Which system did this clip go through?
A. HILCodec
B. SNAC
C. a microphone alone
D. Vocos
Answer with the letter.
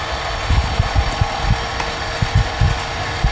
C